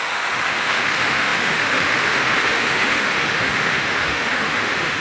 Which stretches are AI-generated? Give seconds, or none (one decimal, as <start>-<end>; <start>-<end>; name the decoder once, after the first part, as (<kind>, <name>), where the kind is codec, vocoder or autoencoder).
0.0-5.0 (autoencoder, DAC-VAE)

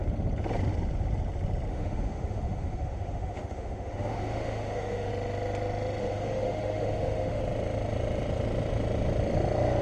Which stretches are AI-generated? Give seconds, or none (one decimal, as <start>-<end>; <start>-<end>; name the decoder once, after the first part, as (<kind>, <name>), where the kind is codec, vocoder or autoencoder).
1.7-5.1 (autoencoder, DAC-VAE); 6.0-7.4

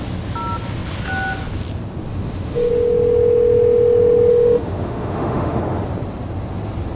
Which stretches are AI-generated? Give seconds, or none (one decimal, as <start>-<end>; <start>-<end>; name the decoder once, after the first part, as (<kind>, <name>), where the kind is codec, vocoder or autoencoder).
2.1-2.7 (autoencoder, DAC-VAE); 4.3-5.6

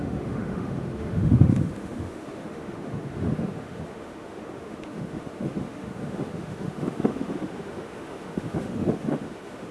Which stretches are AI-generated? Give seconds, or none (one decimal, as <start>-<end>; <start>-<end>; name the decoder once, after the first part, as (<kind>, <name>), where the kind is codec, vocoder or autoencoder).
0.0-9.7 (autoencoder, DAC-VAE)

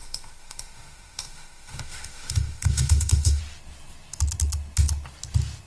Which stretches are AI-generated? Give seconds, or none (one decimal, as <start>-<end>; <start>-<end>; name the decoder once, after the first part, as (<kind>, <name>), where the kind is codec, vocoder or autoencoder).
0.0-3.4 (autoencoder, DAC-VAE)

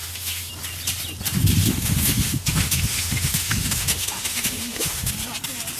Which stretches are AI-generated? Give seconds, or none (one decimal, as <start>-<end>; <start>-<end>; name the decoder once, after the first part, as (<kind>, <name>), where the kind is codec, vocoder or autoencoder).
0.0-0.5 (autoencoder, DAC-VAE); 1.6-5.1

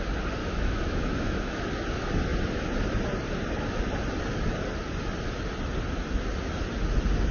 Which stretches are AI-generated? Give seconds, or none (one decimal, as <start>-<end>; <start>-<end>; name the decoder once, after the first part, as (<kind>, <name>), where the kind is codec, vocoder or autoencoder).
0.4-1.6 (autoencoder, DAC-VAE)

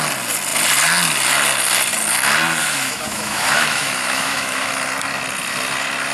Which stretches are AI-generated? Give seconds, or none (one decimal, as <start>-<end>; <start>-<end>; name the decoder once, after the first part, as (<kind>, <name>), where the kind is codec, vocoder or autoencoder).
2.6-4.7 (autoencoder, DAC-VAE)